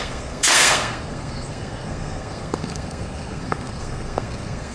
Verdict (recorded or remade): remade